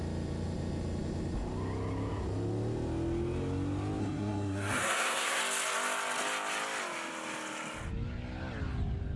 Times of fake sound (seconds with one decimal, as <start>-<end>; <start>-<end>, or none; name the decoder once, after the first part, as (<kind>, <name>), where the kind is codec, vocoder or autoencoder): 4.0-5.4 (codec, SNAC)